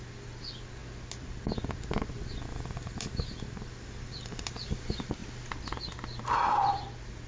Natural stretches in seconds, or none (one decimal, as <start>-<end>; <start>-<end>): 0.0-7.3